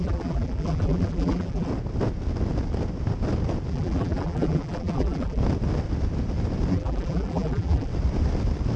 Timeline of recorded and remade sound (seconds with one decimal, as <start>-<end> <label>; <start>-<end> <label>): 0.0-1.7 remade; 1.7-3.7 recorded; 3.7-5.4 remade; 5.4-6.7 recorded; 6.7-7.9 remade; 7.9-8.8 recorded